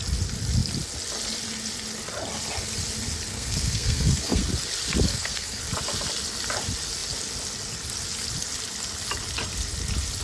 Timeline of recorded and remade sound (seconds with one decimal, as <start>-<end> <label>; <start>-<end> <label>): 0.0-3.3 recorded; 3.3-4.4 remade; 4.4-5.1 recorded; 5.1-5.6 remade; 5.6-10.2 recorded